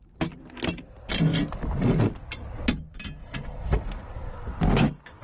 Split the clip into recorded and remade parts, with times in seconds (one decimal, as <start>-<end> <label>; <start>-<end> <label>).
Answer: 0.0-4.5 recorded; 4.5-5.2 remade